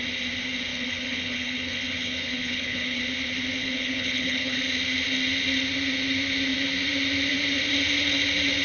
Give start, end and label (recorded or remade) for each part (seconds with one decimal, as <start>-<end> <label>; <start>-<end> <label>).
0.0-0.7 recorded; 0.7-3.0 remade; 3.0-3.6 recorded; 3.6-4.6 remade; 4.6-8.6 recorded